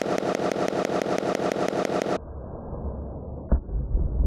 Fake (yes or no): no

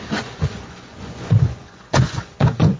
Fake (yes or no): yes